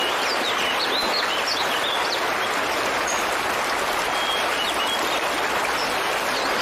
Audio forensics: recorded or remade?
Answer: recorded